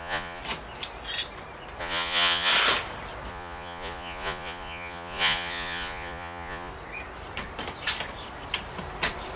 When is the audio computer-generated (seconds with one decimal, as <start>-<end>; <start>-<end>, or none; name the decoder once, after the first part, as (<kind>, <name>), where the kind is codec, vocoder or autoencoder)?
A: 0.0-0.4 (vocoder, Vocos); 1.8-2.5; 3.3-6.7